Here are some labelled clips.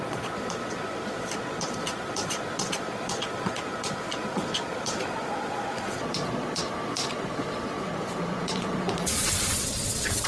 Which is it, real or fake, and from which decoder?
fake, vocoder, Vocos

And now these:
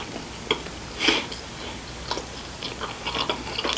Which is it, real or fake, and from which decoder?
real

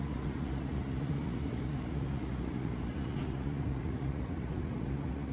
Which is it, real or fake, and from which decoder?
fake, vocoder, Vocos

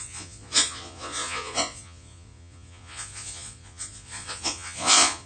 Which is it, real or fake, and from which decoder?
fake, vocoder, Vocos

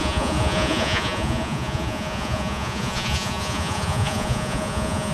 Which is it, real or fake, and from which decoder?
fake, vocoder, Vocos